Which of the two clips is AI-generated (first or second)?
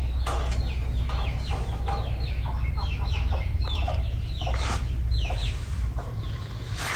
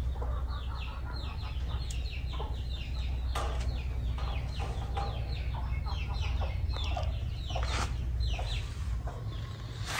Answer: first